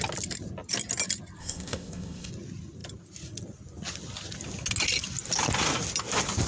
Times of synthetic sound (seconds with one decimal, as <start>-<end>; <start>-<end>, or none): 1.4-2.3